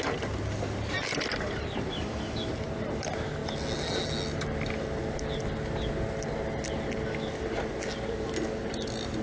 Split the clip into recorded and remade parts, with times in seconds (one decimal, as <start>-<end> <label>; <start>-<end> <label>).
0.0-1.9 recorded; 1.9-2.5 remade; 2.5-9.2 recorded

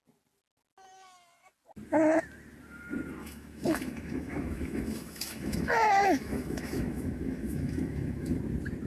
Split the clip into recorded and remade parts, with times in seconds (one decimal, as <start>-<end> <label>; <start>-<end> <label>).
0.0-3.2 recorded; 3.2-8.4 remade; 8.4-8.9 recorded

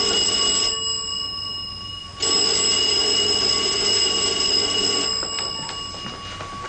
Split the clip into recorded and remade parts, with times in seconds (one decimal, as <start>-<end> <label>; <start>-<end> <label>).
0.0-6.7 recorded

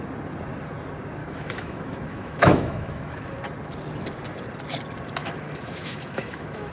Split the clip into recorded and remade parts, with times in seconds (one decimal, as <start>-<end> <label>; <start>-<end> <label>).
0.0-1.2 recorded; 1.2-3.3 remade; 3.3-5.2 recorded; 5.2-6.7 remade